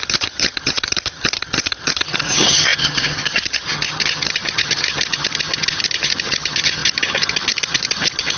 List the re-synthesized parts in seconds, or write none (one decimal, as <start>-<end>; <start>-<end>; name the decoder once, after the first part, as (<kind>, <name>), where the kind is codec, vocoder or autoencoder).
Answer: 0.0-8.4 (vocoder, HiFi-GAN)